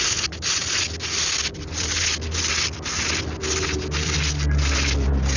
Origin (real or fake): real